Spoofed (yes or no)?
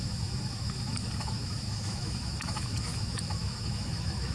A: yes